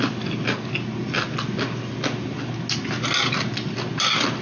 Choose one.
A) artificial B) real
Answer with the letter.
B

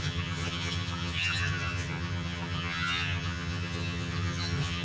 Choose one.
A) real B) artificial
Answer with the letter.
B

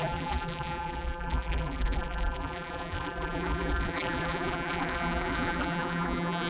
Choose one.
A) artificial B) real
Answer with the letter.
A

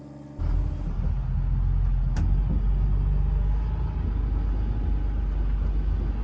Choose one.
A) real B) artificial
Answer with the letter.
A